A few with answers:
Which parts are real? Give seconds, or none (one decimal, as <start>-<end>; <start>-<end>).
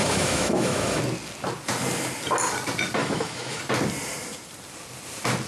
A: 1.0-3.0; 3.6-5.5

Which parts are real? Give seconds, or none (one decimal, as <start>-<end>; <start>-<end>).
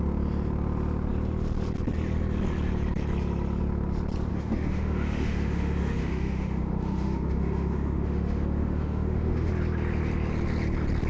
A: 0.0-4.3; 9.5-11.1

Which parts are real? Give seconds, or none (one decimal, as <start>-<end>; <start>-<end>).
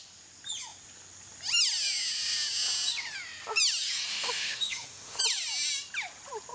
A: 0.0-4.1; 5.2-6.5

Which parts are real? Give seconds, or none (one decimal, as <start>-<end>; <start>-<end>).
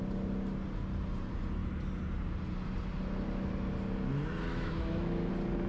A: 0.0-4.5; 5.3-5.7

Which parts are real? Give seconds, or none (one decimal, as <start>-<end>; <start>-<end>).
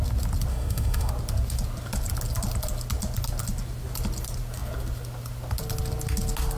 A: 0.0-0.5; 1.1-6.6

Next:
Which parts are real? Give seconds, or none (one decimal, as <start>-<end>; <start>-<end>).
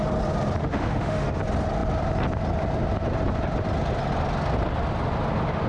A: 0.0-0.6; 1.4-5.7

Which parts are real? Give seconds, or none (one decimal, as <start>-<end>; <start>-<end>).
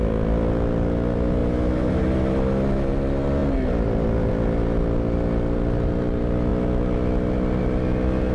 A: 0.0-8.3